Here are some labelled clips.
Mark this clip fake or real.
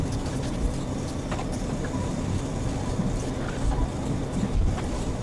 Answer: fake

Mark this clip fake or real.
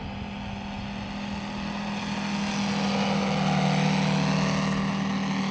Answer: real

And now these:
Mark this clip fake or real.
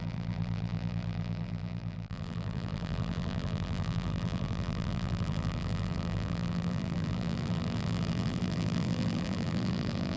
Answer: fake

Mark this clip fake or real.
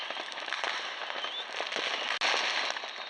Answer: real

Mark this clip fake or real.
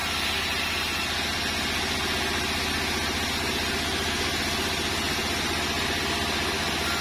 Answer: real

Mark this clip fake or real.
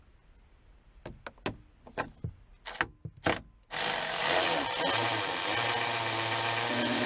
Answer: real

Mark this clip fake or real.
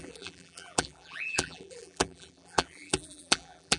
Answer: fake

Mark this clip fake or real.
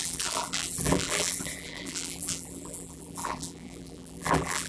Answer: fake